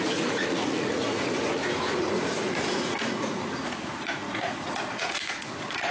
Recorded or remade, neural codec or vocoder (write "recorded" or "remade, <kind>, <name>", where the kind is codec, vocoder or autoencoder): remade, vocoder, Vocos